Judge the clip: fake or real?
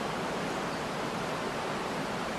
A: real